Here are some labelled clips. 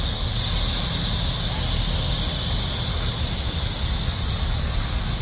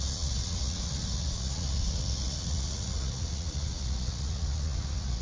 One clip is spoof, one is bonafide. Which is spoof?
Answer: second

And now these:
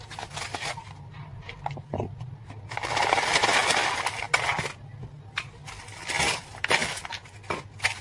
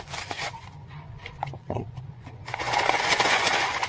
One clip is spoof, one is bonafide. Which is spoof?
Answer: second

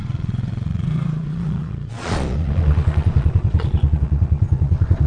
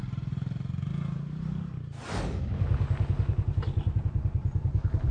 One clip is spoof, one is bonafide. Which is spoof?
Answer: first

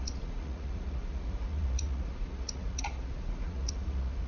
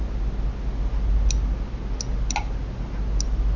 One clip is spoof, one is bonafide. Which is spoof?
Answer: first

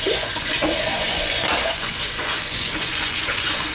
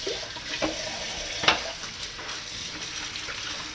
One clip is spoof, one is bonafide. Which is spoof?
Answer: first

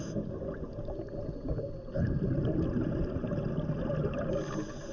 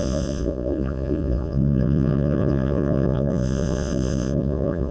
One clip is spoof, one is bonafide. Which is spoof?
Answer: second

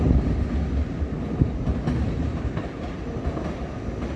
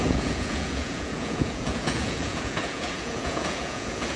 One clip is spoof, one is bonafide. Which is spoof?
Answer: second